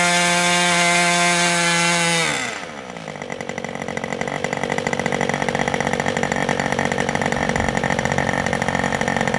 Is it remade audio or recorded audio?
recorded